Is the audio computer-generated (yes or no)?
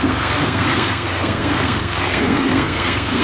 yes